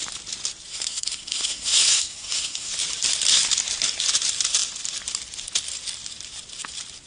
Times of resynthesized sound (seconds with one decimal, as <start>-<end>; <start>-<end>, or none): 0.7-2.7

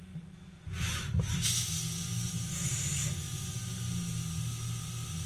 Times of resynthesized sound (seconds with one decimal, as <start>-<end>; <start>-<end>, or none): none

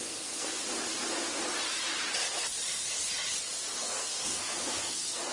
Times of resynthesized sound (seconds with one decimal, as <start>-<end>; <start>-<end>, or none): 0.0-0.6; 3.8-5.3